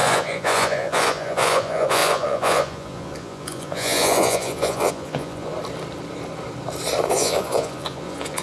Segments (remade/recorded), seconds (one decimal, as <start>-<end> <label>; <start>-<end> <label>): 0.0-5.5 remade; 5.5-7.1 recorded; 7.1-8.4 remade